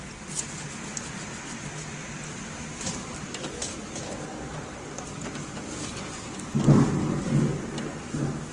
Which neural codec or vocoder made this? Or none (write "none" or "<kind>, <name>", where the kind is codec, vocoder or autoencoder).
none